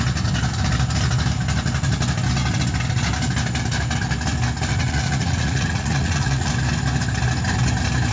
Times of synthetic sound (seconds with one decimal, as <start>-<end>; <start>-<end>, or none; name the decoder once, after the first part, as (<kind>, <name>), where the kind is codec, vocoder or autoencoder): 4.7-6.5 (vocoder, Vocos)